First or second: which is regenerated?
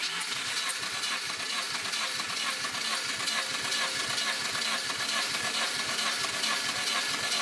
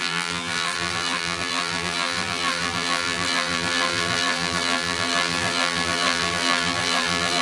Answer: second